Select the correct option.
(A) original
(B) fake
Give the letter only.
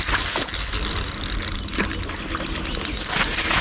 A